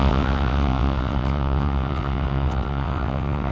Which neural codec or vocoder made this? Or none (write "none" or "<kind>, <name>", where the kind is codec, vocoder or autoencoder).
vocoder, WaveNeXt